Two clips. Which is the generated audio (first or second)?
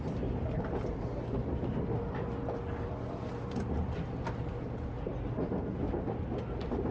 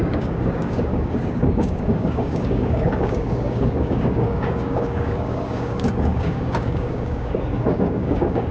second